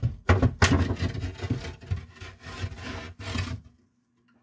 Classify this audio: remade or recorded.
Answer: recorded